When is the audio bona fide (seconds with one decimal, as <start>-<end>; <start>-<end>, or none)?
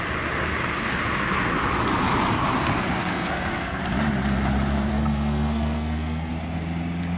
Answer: 0.0-3.0; 3.8-4.9; 6.3-7.2